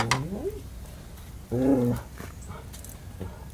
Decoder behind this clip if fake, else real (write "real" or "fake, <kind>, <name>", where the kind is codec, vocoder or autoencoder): real